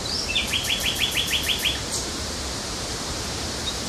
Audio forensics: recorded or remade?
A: remade